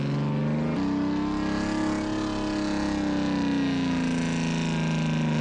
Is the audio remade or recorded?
recorded